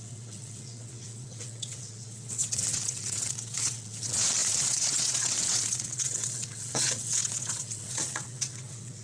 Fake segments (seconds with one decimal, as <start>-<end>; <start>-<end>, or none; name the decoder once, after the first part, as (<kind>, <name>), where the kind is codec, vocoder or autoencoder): 0.0-9.0 (vocoder, WaveNeXt)